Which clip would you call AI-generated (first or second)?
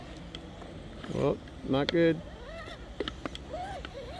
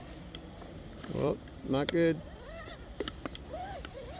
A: second